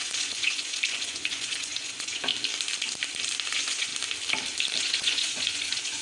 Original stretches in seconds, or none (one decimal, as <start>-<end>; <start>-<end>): 2.3-3.5; 3.9-4.8